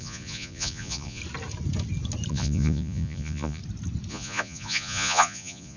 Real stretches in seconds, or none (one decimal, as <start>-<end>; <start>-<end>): 1.2-2.3; 3.6-4.1